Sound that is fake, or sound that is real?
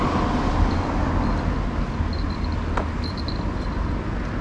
real